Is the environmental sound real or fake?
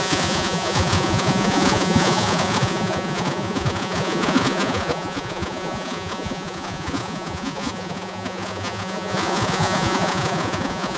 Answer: fake